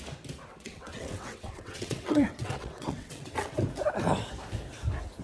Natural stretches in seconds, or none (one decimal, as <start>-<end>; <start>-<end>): 0.0-0.5; 3.6-5.2